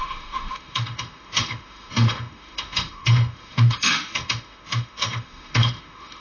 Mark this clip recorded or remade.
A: remade